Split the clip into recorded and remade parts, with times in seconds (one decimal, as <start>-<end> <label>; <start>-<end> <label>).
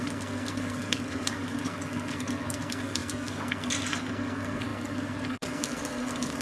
0.0-6.4 remade